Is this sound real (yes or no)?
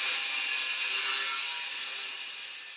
yes